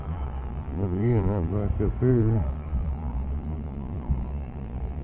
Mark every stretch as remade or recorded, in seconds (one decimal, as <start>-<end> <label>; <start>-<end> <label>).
0.0-1.5 remade; 1.5-2.1 recorded; 2.1-5.0 remade